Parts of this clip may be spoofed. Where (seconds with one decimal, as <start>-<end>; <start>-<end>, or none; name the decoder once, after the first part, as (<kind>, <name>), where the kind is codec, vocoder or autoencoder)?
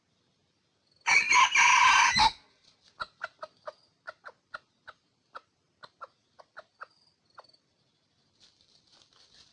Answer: none